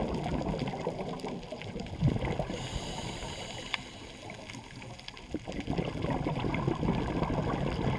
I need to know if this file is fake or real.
real